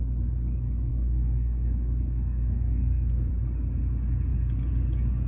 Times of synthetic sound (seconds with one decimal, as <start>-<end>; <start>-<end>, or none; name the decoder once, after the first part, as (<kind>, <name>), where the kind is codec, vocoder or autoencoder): 0.9-3.3 (codec, SNAC)